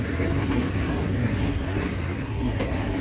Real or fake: fake